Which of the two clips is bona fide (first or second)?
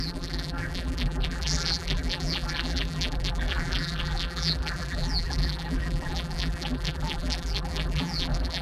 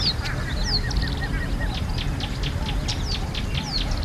second